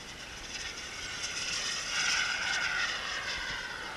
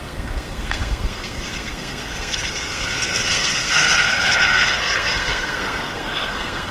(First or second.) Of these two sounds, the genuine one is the first